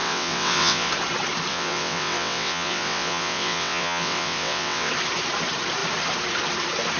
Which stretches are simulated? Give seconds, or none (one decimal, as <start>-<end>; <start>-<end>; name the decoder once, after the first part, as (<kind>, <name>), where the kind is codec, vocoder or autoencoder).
0.0-0.9 (vocoder, WaveNeXt); 1.5-4.9